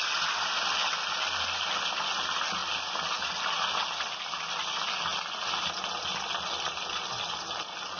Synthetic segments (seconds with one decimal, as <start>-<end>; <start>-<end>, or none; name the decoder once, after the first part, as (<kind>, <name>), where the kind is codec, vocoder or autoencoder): none